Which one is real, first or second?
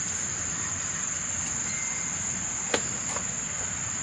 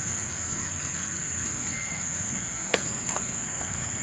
first